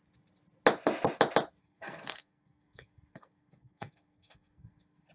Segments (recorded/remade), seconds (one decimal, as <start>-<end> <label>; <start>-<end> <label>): 0.0-1.6 recorded; 1.6-5.1 remade